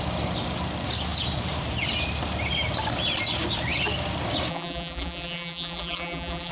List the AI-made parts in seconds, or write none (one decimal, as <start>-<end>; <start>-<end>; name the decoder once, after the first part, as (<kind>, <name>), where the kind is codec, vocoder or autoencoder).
4.5-6.5 (vocoder, BigVGAN v2)